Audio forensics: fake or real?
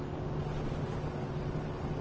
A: real